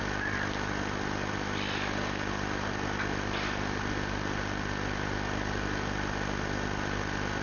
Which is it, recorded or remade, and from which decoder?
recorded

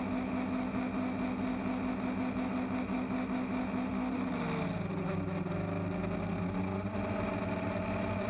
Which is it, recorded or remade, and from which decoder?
recorded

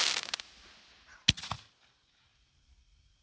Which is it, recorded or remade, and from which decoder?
recorded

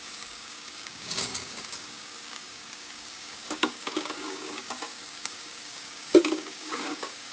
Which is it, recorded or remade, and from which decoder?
remade, codec, DAC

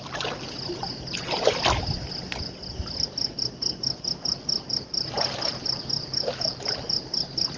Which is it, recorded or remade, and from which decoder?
recorded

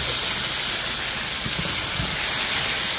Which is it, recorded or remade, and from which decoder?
recorded